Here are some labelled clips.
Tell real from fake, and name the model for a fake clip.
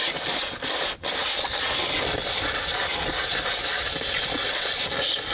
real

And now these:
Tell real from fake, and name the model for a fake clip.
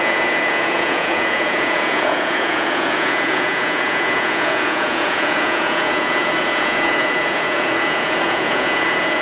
fake, vocoder, Vocos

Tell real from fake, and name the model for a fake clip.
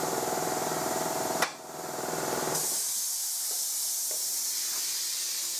fake, vocoder, BigVGAN v2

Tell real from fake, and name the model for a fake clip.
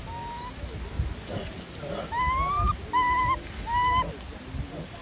real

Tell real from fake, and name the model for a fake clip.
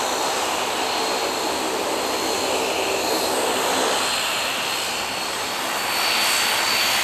real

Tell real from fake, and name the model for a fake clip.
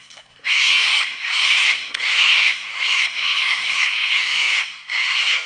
fake, codec, SNAC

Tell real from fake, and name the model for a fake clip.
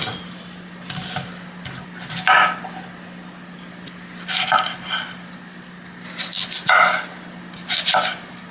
real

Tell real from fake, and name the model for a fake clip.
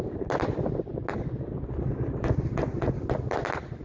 real